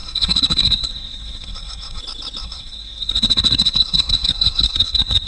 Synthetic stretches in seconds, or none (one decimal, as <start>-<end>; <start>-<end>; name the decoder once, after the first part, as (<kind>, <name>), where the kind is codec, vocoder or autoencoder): 0.0-2.0 (codec, SNAC); 2.4-5.3

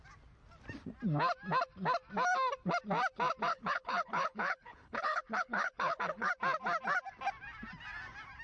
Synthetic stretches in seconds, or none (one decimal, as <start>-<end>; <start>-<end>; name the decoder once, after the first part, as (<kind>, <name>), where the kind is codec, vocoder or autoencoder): 3.5-6.3 (codec, HILCodec)

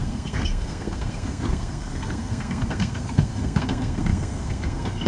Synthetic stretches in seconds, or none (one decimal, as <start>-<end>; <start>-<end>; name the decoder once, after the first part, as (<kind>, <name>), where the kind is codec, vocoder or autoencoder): 0.0-5.1 (codec, SNAC)

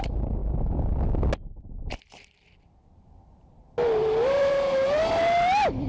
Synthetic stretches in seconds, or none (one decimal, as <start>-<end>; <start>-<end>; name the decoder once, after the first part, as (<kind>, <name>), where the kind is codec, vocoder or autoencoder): none